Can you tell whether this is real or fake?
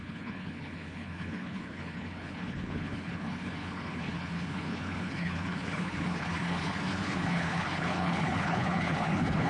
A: fake